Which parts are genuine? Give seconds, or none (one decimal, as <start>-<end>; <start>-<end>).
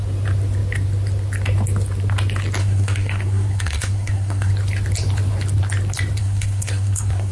0.0-2.6; 4.5-6.2